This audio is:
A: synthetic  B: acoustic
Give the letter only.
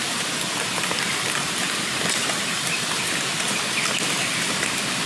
B